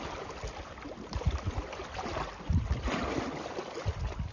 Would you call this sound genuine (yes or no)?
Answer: yes